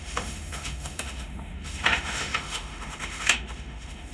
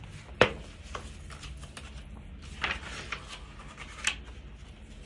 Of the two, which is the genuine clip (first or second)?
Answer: second